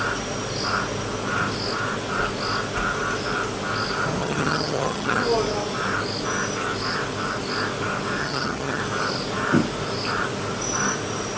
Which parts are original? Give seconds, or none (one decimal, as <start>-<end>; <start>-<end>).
0.0-4.2; 5.2-8.2; 8.8-11.4